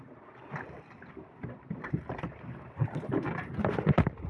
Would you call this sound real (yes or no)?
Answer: no